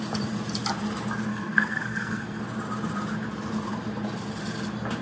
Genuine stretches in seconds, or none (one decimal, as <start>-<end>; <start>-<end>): 0.0-1.3; 2.4-5.0